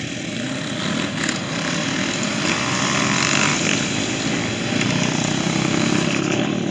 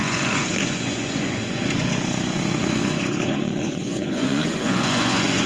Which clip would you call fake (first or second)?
second